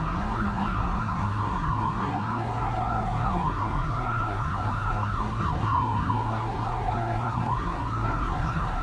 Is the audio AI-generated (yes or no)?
yes